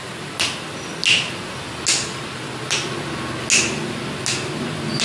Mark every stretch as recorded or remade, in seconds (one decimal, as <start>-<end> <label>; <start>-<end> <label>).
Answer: 0.0-5.0 recorded